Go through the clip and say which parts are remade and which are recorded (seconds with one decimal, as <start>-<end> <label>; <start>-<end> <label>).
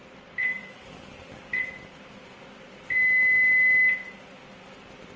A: 0.0-0.5 recorded; 0.5-1.6 remade; 1.6-5.2 recorded